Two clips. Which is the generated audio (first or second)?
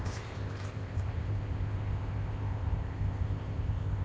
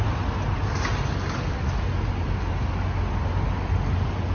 first